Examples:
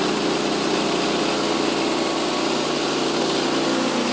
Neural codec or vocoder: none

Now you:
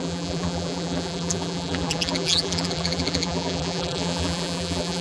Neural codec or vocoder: vocoder, BigVGAN v2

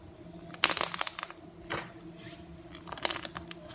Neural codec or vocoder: none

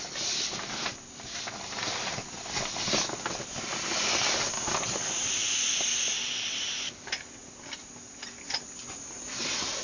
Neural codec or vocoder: none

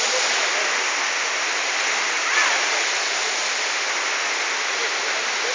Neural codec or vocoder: none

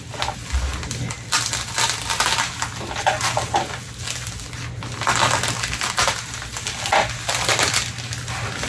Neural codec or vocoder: none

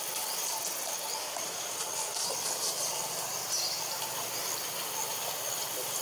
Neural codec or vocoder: none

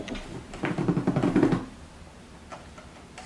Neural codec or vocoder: none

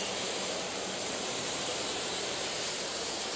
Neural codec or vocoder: vocoder, BigVGAN v2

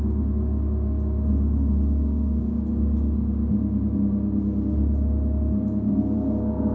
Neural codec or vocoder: none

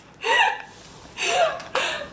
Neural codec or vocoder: vocoder, BigVGAN v2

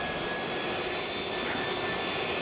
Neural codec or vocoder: none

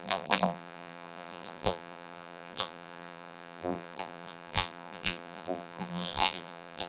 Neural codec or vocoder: vocoder, BigVGAN v2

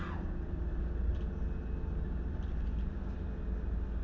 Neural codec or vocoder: none